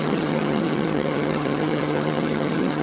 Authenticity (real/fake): fake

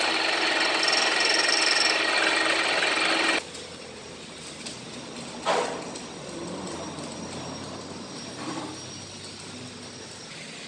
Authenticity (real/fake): real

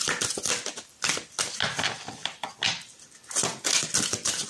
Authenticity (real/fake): real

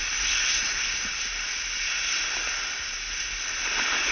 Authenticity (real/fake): real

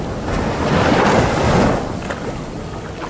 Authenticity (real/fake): real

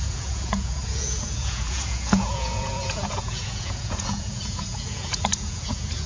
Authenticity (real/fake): fake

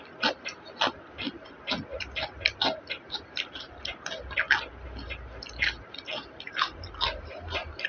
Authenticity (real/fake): real